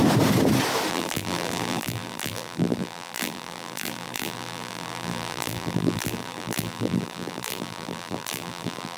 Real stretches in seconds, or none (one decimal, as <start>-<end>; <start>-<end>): 0.0-0.9